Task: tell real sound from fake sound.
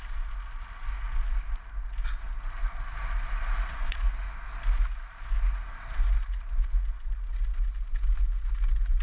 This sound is real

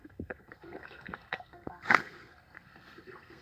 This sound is fake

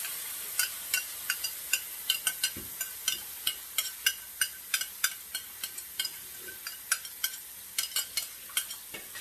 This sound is real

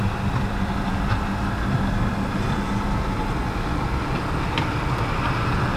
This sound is real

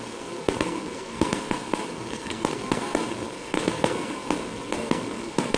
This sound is fake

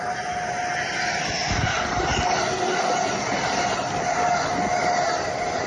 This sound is real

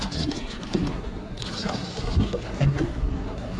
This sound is fake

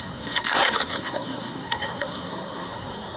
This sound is fake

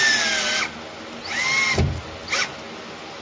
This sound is real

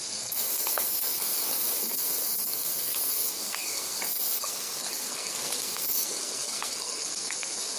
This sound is fake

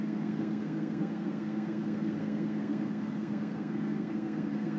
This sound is fake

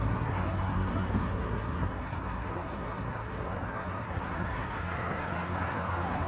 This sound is fake